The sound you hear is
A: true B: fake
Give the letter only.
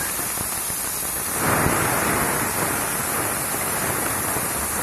A